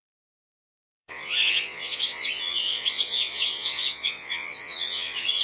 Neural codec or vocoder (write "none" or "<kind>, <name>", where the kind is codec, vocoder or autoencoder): vocoder, Vocos